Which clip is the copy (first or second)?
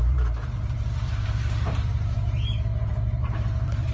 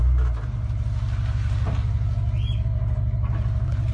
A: first